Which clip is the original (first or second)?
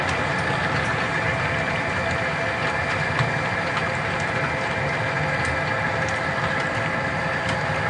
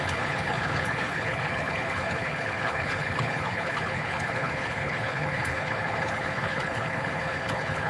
first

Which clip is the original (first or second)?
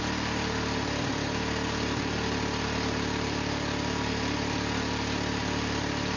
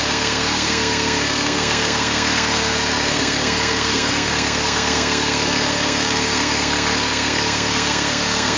first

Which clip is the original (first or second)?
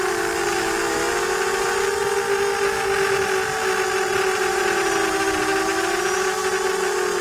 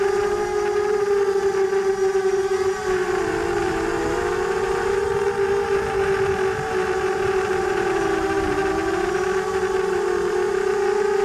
first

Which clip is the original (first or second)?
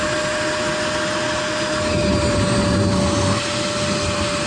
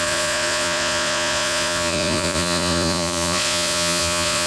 first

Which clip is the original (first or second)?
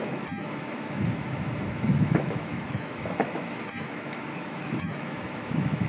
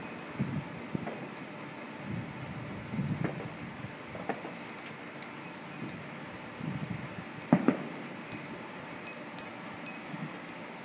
second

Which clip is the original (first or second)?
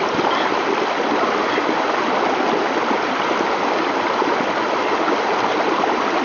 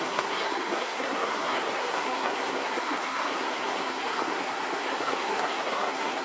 first